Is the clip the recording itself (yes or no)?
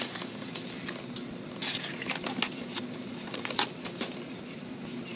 yes